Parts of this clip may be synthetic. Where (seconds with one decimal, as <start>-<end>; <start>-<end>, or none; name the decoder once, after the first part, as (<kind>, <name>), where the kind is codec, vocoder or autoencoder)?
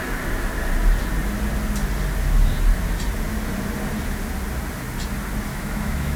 5.5-6.2 (autoencoder, DAC-VAE)